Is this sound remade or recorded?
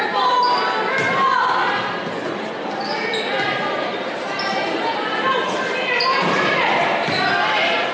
recorded